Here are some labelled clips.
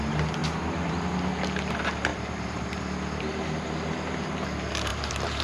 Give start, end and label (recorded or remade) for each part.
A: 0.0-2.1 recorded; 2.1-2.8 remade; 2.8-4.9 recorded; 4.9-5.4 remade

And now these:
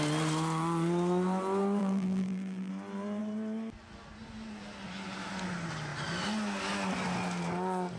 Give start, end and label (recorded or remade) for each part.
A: 0.0-1.8 recorded; 1.8-2.7 remade; 2.7-8.0 recorded

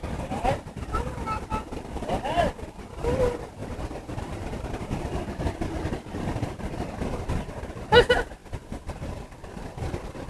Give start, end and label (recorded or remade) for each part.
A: 0.0-3.6 recorded; 3.6-4.8 remade; 4.8-8.4 recorded; 8.4-9.0 remade; 9.0-10.3 recorded

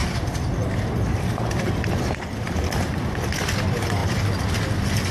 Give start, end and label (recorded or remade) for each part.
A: 0.0-3.1 remade; 3.1-4.0 recorded; 4.0-4.5 remade; 4.5-5.1 recorded

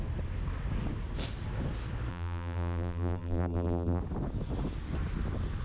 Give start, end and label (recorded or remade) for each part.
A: 0.0-2.1 recorded; 2.1-4.0 remade; 4.0-5.6 recorded

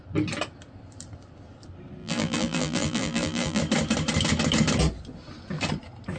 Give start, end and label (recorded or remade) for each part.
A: 0.0-2.0 recorded; 2.0-3.6 remade; 3.6-6.2 recorded